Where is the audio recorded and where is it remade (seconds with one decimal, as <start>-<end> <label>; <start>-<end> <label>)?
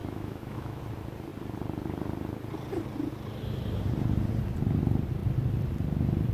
0.0-0.8 remade; 0.8-6.3 recorded